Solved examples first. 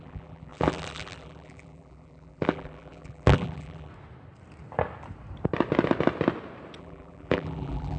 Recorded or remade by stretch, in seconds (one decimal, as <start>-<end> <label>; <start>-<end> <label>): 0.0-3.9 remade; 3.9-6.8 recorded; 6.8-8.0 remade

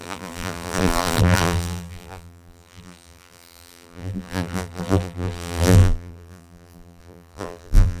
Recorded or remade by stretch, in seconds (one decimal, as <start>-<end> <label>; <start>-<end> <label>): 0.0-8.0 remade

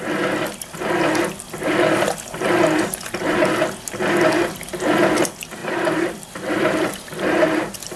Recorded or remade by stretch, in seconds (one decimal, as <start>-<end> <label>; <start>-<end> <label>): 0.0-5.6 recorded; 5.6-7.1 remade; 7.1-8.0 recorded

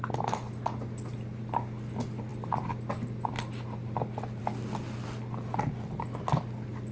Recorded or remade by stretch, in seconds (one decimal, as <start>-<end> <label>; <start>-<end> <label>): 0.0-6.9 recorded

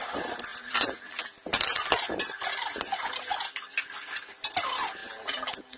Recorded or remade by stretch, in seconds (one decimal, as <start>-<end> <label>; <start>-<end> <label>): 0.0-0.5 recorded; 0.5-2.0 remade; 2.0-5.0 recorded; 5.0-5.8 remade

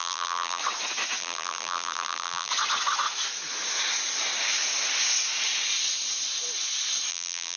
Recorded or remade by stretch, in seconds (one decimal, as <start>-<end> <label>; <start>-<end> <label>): 0.0-0.6 remade; 0.6-1.2 recorded; 1.2-2.5 remade; 2.5-7.1 recorded; 7.1-7.6 remade